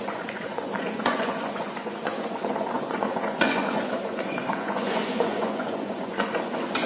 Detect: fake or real fake